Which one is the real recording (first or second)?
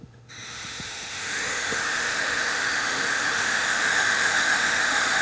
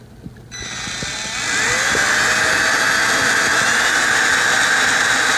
second